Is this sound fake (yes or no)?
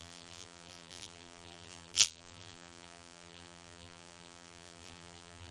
yes